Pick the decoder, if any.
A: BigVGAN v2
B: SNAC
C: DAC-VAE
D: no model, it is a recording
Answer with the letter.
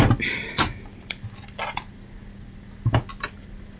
A